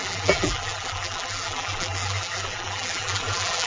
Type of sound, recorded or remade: remade